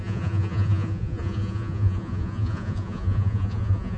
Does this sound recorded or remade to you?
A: remade